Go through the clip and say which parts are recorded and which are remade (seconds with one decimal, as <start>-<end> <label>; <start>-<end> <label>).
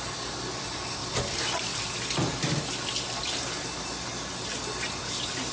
0.0-5.5 recorded